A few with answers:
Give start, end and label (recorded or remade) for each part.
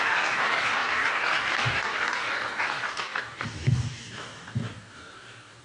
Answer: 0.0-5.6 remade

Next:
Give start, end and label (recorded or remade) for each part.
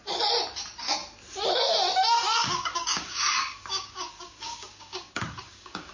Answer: 0.0-2.4 recorded; 2.4-5.9 remade